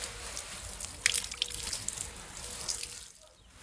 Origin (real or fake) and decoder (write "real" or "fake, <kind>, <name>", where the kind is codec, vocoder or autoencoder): real